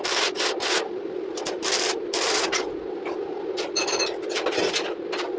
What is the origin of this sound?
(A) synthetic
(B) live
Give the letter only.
B